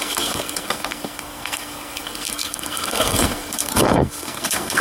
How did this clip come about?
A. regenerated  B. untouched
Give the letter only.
A